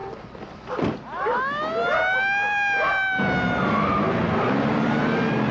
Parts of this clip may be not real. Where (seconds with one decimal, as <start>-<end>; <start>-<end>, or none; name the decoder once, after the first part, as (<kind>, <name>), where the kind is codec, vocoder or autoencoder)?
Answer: none